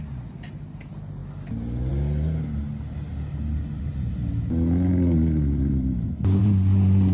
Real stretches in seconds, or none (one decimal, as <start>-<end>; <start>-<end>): 0.0-7.1